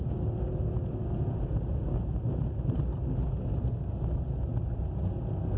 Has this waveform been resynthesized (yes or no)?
no